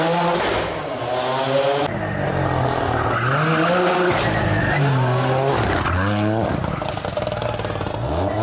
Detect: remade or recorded recorded